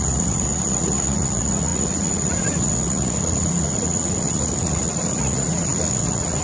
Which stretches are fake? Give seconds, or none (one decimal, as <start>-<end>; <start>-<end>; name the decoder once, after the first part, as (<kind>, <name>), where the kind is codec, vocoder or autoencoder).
0.0-6.4 (vocoder, Vocos)

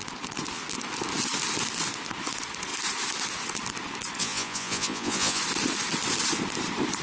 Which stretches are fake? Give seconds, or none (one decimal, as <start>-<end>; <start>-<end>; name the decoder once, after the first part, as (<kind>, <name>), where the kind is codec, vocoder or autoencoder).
4.2-5.4 (vocoder, Vocos)

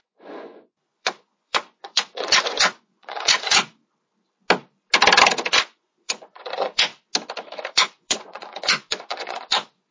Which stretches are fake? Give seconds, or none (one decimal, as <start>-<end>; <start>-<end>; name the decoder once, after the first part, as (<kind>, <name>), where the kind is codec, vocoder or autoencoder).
0.0-3.8 (vocoder, Vocos); 5.5-6.9; 7.7-9.9

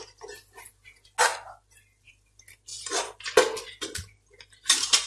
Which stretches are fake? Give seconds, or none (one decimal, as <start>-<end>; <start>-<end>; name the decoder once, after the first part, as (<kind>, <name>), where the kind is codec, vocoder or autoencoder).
none

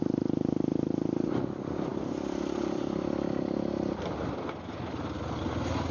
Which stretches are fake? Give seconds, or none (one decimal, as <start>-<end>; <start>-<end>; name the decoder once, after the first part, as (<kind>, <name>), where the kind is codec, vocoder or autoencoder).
none

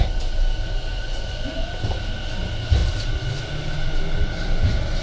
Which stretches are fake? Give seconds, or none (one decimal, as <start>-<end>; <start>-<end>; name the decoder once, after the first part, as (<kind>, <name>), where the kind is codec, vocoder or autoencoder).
0.9-1.5 (vocoder, Vocos)

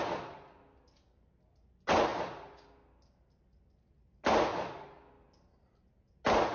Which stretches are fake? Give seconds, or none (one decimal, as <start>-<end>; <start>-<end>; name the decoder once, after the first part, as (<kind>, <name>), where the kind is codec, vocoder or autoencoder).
none

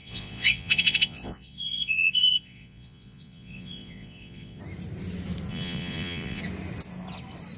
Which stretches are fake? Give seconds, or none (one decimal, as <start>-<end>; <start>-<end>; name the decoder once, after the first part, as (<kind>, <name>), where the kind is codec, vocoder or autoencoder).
0.0-4.6 (vocoder, Vocos); 5.5-6.4